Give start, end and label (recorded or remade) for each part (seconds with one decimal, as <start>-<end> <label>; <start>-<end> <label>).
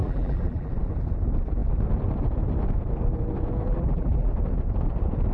0.0-0.7 remade; 0.7-3.7 recorded; 3.7-4.3 remade; 4.3-5.3 recorded